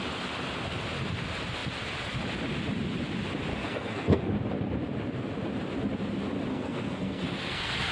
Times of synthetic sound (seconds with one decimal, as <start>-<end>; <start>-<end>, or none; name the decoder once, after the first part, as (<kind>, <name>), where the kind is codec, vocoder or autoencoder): 3.5-4.3 (codec, SNAC); 6.5-7.9